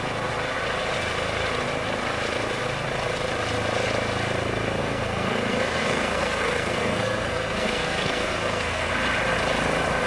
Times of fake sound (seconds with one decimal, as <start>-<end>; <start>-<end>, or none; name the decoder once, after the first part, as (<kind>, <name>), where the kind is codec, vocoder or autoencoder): 4.8-8.9 (codec, SNAC)